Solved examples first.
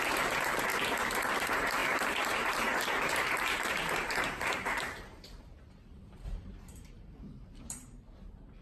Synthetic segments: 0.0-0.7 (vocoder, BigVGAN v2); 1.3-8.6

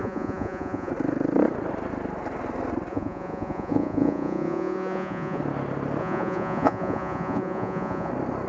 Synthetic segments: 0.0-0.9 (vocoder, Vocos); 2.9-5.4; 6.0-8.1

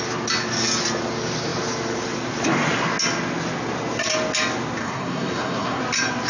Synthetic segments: 4.8-5.8 (codec, SNAC)

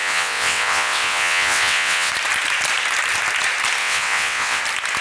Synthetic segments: 0.0-2.1 (vocoder, WaveNeXt); 3.8-4.6

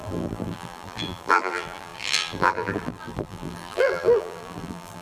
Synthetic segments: 0.0-5.0 (vocoder, BigVGAN v2)